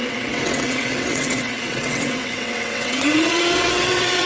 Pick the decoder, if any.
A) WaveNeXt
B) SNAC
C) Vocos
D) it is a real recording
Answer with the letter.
A